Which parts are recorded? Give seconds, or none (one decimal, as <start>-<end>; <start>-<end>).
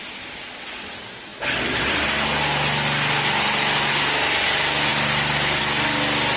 0.0-6.4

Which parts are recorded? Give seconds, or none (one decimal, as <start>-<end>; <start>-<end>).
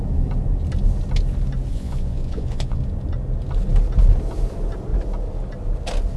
0.0-1.7; 2.8-6.2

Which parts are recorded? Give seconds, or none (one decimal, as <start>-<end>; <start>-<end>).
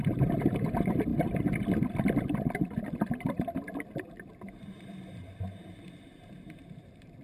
1.1-4.3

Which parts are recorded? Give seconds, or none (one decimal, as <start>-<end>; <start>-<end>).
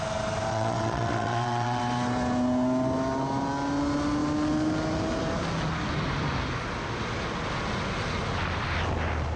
0.0-0.5; 1.8-9.4